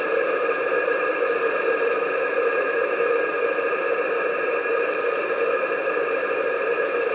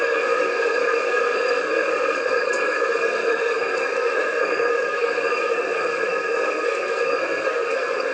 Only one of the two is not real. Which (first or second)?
second